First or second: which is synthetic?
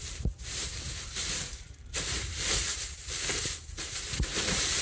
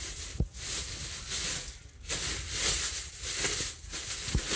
first